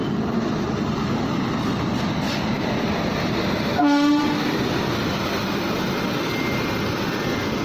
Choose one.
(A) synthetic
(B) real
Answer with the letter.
B